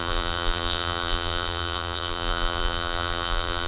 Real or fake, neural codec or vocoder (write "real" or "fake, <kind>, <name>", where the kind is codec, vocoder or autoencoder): fake, vocoder, BigVGAN v2